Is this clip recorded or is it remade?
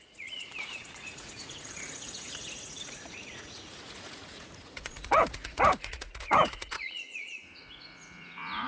remade